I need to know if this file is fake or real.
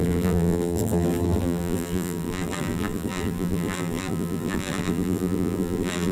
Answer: fake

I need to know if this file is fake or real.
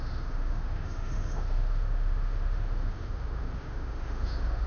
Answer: fake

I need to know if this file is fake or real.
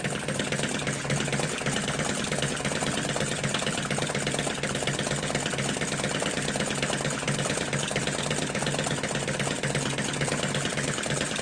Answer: real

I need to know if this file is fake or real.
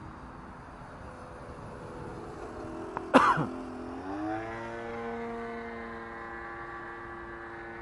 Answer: real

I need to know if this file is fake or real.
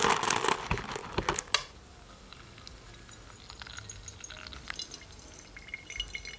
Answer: real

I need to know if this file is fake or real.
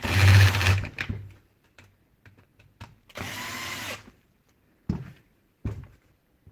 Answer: fake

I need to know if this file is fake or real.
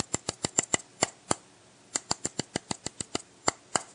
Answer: fake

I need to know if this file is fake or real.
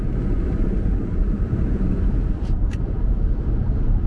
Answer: fake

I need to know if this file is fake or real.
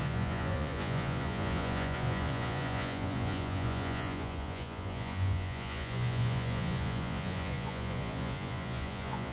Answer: fake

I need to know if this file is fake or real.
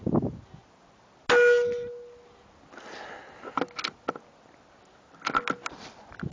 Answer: real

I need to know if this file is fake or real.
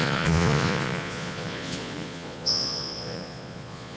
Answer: fake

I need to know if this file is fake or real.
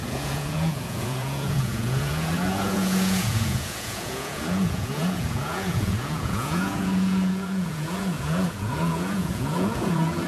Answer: fake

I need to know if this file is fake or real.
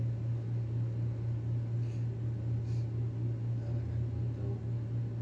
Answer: real